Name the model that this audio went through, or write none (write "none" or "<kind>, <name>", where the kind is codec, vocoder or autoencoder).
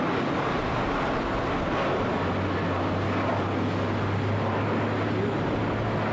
none